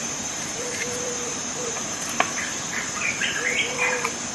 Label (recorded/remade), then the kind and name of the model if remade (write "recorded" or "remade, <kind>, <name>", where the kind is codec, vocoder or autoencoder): remade, vocoder, BigVGAN v2